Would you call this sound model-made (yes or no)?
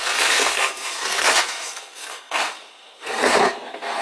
yes